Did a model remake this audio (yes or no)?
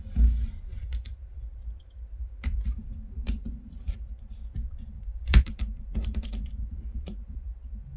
yes